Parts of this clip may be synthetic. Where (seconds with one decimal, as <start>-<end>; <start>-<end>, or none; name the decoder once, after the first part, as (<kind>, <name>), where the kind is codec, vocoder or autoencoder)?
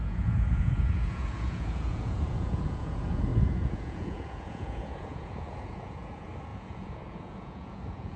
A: 0.0-8.2 (vocoder, Vocos)